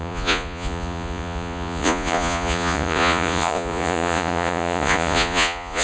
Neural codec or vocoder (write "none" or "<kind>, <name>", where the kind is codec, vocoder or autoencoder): vocoder, Vocos